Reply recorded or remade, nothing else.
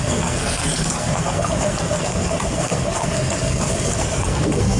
remade